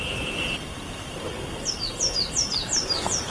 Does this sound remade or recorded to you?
recorded